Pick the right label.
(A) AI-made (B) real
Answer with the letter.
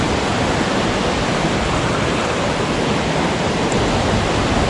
B